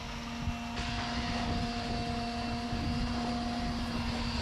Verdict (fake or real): real